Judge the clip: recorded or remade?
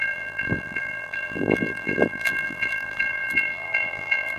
remade